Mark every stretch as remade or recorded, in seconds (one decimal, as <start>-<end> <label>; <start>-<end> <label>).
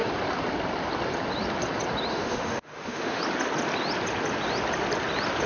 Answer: 0.0-2.1 recorded; 2.1-3.2 remade; 3.2-5.5 recorded